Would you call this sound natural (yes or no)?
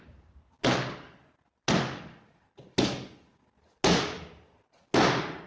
yes